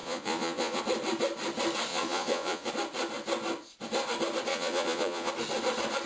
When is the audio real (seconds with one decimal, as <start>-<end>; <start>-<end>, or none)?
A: 0.8-1.9; 2.7-4.5; 5.3-6.1

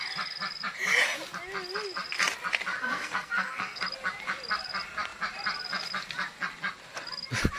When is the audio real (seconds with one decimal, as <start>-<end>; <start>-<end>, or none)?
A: 0.0-2.8; 3.8-7.6

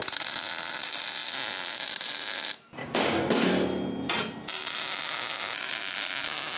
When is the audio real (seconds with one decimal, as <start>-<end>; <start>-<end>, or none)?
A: 0.0-2.8; 3.5-6.6

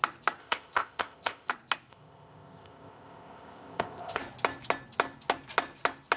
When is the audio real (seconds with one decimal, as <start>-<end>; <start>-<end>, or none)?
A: 0.0-0.4; 1.5-1.9; 4.2-6.2

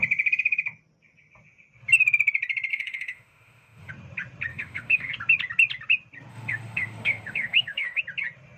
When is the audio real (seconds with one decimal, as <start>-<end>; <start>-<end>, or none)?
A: 0.0-2.7; 3.9-4.5; 5.1-6.3; 8.0-8.6